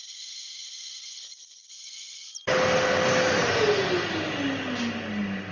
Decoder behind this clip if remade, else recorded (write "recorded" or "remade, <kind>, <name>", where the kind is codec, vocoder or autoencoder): recorded